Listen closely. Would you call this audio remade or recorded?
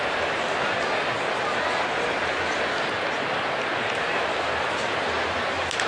recorded